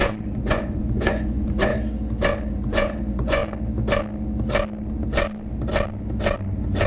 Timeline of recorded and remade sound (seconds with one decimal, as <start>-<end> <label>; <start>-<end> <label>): 0.0-1.7 remade; 1.7-2.5 recorded; 2.5-3.4 remade; 3.4-6.9 recorded